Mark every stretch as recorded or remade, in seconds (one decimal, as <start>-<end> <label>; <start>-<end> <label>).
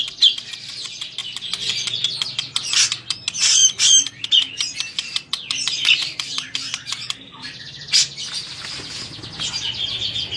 0.0-3.6 recorded; 3.6-7.6 remade; 7.6-10.4 recorded